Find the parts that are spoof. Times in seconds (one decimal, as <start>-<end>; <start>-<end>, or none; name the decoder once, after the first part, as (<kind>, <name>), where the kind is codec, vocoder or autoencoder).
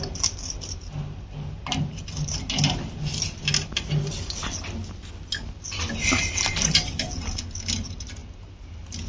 none